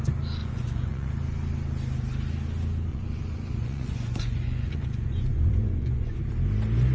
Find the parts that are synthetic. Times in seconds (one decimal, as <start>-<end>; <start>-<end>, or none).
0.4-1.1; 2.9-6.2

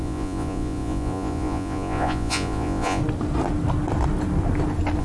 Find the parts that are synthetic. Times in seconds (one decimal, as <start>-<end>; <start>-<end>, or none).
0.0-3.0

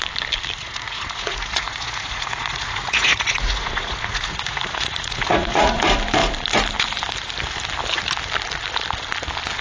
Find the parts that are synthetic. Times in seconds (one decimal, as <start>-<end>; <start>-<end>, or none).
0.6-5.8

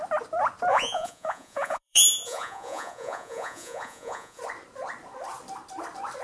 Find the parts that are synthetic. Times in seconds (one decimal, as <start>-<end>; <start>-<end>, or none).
0.7-4.4

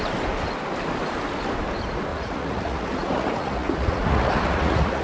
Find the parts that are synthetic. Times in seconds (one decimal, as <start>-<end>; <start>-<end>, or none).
2.1-5.0

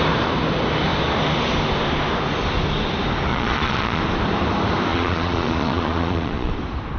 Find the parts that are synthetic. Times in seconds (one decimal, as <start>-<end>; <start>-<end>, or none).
3.3-4.0; 4.9-6.5

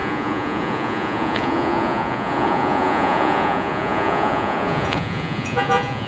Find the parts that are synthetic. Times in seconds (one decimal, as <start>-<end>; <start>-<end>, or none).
0.0-6.1